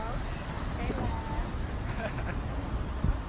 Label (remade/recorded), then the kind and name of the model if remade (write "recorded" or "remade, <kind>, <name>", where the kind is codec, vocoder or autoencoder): recorded